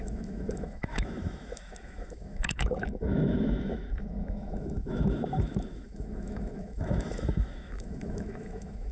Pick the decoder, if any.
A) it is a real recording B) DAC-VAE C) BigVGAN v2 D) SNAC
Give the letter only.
B